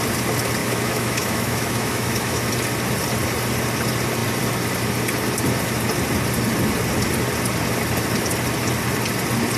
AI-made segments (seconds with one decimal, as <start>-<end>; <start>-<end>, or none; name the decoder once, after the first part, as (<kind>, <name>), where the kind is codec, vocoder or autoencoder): 0.6-2.5 (autoencoder, DAC-VAE)